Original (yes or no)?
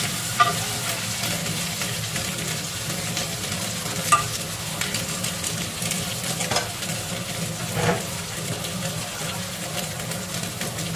yes